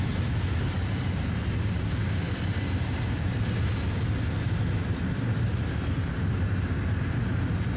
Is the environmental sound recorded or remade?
recorded